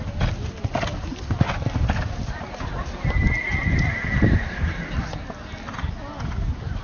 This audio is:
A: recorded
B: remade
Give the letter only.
A